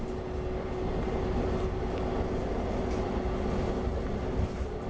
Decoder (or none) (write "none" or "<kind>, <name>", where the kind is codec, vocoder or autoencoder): none